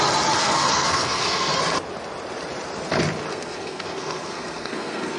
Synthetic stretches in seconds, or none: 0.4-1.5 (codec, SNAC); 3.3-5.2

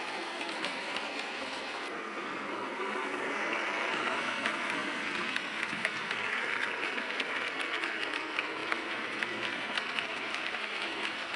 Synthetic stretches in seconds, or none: 0.0-11.4 (codec, SNAC)

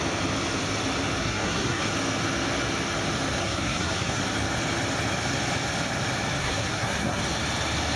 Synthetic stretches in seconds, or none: 1.2-1.9 (codec, SNAC); 3.4-4.2; 6.4-7.2

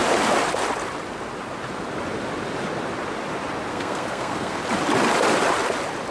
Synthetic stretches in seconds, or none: 3.7-4.6 (codec, SNAC)

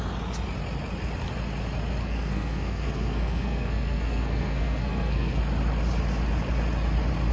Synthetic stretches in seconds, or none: 2.0-5.4 (codec, SNAC)

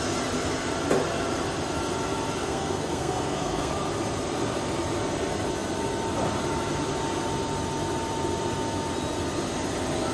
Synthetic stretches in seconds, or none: 2.4-3.7 (codec, SNAC)

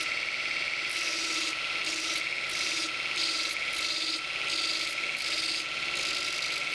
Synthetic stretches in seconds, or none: none